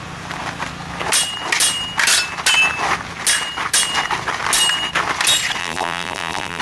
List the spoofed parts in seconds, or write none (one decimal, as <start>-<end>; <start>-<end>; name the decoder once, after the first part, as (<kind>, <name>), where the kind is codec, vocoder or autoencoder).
5.6-6.6 (vocoder, BigVGAN v2)

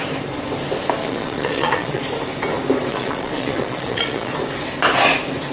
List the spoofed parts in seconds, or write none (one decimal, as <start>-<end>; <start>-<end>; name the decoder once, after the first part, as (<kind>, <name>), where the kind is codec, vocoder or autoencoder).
1.0-2.0 (vocoder, Vocos); 2.9-4.3

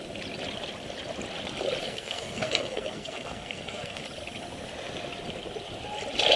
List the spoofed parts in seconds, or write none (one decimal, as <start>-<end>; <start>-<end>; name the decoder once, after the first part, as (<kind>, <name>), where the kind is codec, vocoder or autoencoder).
1.8-4.0 (codec, SNAC)

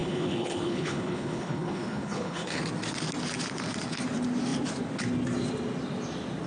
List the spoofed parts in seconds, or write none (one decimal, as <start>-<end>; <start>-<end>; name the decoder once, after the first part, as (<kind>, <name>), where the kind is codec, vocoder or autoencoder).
0.0-2.6 (codec, HILCodec)

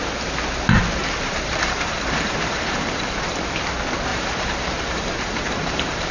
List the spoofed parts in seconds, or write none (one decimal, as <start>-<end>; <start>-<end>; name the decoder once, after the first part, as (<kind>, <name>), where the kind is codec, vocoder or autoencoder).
1.0-3.4 (vocoder, BigVGAN v2); 4.1-6.1